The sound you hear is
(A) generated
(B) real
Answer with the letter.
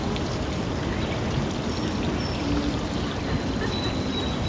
B